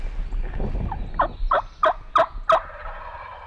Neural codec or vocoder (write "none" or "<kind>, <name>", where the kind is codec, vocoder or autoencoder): none